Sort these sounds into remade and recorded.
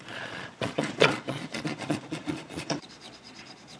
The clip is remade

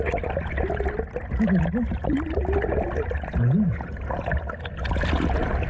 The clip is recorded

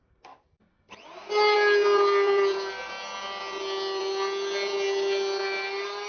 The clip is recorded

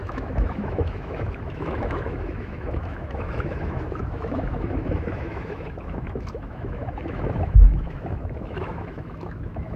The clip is remade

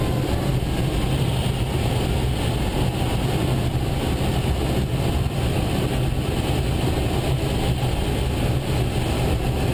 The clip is recorded